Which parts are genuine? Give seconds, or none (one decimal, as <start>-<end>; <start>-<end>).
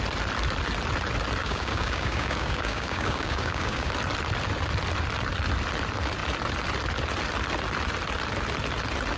0.0-1.4; 3.9-9.2